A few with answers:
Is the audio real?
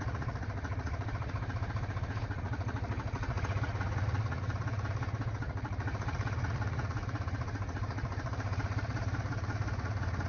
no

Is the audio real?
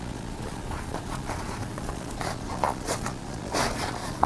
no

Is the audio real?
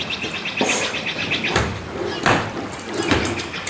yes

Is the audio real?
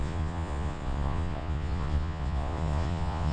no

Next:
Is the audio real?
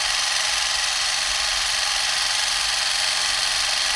yes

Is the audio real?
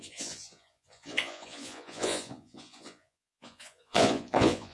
no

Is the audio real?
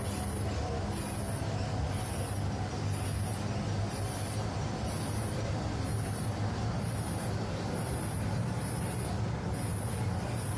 yes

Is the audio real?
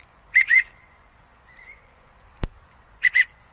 no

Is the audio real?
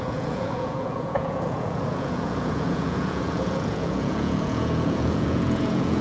no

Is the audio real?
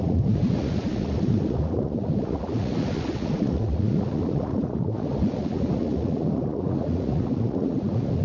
no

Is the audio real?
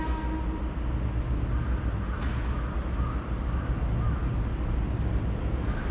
yes